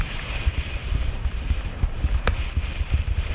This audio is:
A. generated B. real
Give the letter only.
B